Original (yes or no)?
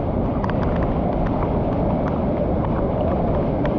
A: yes